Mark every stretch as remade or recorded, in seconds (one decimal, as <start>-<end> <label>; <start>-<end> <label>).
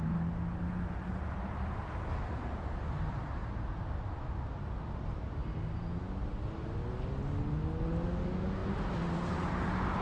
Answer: 0.0-10.0 recorded